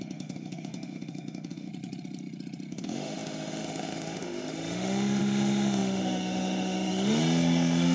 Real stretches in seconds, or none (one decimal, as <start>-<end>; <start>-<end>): 1.7-2.7